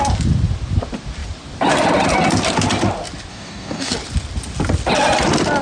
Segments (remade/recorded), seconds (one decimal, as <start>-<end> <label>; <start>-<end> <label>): 0.0-3.3 recorded; 3.3-3.9 remade; 3.9-5.6 recorded